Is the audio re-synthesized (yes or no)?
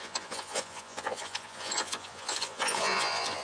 yes